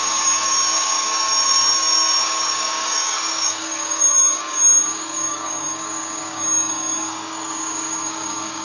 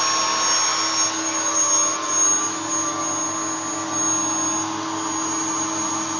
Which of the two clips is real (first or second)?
second